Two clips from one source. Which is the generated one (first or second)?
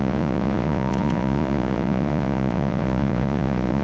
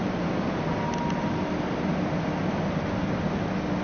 first